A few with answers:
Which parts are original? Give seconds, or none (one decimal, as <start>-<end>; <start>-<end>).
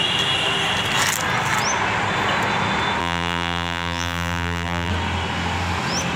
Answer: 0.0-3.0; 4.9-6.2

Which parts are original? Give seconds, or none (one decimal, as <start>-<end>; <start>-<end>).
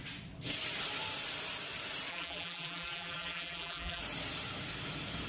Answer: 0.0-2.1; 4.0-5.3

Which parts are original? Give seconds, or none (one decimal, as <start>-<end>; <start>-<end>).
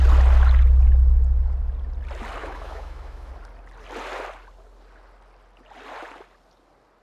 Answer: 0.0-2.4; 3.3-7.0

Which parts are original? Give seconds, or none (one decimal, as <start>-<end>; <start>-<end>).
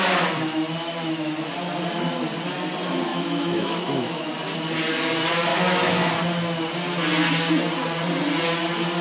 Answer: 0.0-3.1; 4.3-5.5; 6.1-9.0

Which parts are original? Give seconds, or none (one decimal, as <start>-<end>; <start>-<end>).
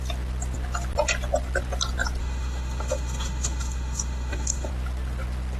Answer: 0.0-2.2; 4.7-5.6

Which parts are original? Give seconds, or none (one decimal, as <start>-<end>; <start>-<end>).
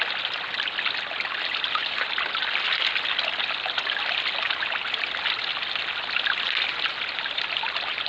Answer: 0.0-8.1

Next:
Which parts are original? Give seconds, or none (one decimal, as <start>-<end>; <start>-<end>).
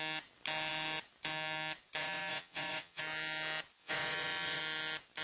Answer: 0.0-2.0; 3.0-3.8; 4.6-5.2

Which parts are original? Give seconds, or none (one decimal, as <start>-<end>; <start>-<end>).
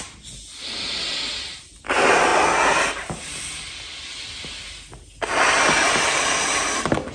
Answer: 0.0-7.1